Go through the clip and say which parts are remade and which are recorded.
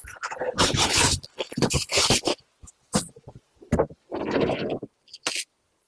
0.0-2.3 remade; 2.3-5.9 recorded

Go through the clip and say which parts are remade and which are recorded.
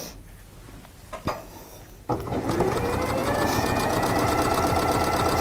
0.0-2.1 recorded; 2.1-2.8 remade; 2.8-3.2 recorded; 3.2-4.3 remade; 4.3-5.4 recorded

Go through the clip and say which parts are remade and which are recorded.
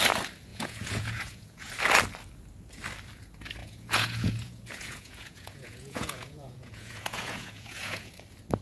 0.0-0.5 recorded; 0.5-1.7 remade; 1.7-3.6 recorded; 3.6-8.1 remade; 8.1-8.6 recorded